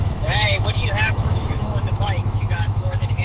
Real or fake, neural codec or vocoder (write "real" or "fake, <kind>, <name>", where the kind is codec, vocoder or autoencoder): fake, autoencoder, DAC-VAE